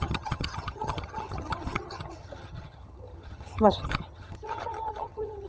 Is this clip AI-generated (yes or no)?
yes